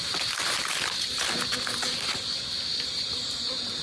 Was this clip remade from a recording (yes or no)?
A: no